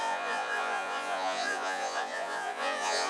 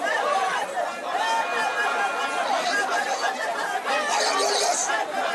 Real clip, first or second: second